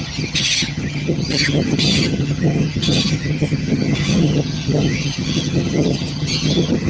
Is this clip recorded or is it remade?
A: remade